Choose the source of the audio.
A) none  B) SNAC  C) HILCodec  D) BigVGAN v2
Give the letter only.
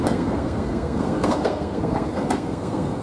B